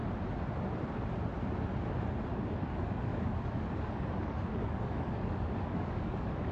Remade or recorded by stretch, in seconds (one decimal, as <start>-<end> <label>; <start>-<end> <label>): 0.0-2.3 recorded; 2.3-6.5 remade